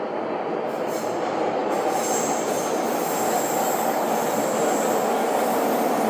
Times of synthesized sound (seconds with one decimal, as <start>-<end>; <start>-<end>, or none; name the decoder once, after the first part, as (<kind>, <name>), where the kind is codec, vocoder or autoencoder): 1.6-2.2 (vocoder, BigVGAN v2)